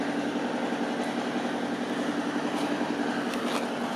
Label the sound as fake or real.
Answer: real